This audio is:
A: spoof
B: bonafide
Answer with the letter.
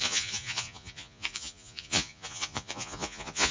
A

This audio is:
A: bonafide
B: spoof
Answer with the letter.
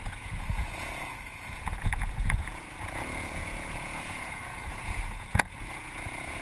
B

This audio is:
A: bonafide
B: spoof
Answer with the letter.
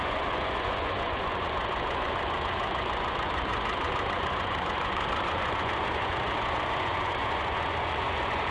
B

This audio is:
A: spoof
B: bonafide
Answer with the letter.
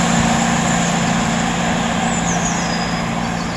B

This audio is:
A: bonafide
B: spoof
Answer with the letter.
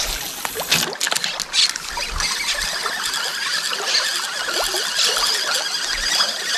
A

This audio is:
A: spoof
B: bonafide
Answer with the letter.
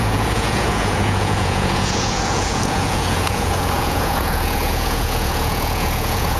A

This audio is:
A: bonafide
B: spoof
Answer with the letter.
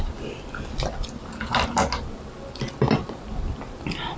A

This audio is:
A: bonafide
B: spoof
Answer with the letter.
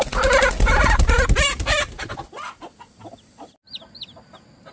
A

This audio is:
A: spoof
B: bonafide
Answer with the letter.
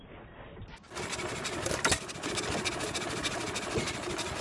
B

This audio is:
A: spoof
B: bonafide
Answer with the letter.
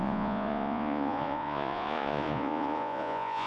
A